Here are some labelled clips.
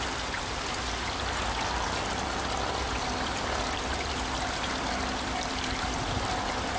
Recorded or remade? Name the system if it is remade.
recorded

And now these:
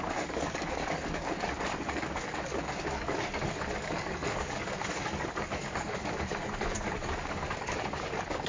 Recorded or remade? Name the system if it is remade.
remade, codec, DAC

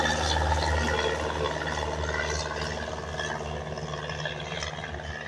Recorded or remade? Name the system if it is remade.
recorded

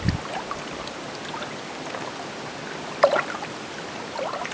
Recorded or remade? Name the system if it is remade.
recorded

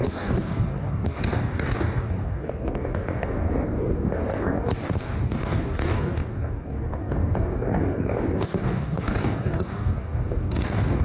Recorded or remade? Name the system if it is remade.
remade, codec, DAC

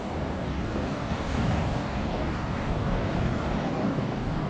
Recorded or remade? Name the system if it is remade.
remade, codec, DAC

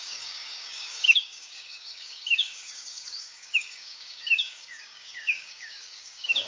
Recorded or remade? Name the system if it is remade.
remade, codec, DAC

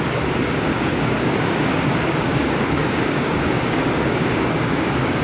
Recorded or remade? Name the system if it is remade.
remade, codec, DAC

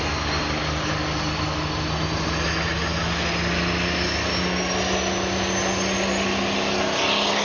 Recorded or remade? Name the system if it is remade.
recorded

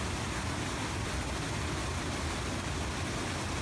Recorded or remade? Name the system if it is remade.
recorded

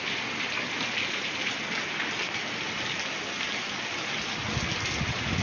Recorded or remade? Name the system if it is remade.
recorded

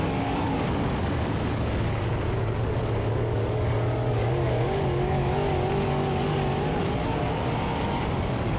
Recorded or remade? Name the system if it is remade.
remade, codec, DAC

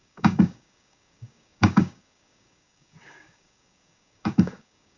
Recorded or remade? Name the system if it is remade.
remade, codec, DAC